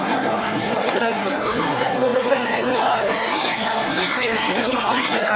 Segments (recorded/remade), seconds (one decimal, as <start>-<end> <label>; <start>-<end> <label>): 0.0-5.4 remade